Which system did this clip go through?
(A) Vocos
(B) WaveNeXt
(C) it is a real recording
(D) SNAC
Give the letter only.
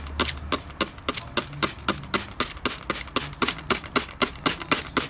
C